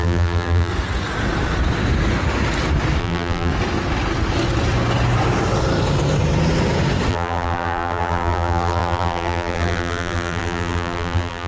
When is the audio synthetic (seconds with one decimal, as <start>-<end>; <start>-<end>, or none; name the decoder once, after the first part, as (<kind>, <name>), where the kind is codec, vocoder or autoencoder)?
0.0-0.7 (vocoder, BigVGAN v2); 3.0-3.5; 7.1-11.5